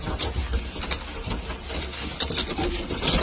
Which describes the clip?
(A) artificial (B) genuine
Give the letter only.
B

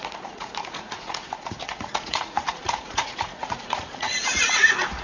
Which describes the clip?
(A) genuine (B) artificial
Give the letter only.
B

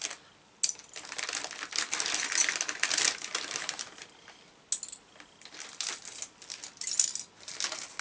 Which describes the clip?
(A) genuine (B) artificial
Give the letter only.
A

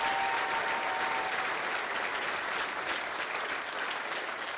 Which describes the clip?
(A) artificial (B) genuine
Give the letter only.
B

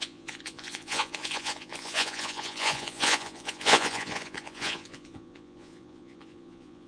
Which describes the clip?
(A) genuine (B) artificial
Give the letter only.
B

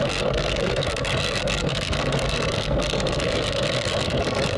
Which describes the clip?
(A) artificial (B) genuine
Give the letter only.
A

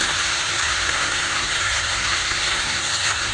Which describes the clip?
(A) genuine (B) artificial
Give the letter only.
B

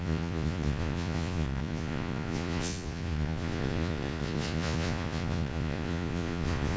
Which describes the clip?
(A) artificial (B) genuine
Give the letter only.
A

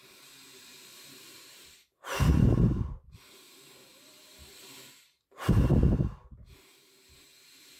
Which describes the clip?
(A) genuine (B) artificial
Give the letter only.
B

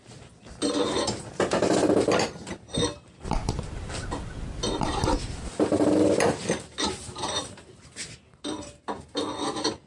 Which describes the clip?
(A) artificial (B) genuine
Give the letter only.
B